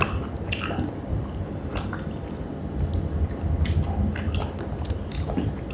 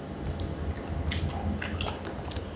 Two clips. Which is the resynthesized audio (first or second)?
first